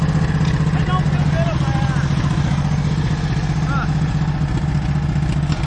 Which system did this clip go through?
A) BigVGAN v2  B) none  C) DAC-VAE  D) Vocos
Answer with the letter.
B